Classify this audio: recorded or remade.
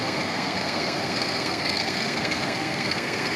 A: remade